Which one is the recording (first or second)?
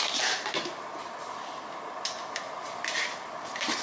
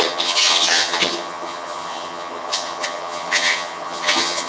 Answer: first